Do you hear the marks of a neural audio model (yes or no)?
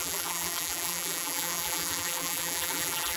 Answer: yes